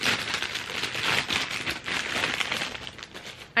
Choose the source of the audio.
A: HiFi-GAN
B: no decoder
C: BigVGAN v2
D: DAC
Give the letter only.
B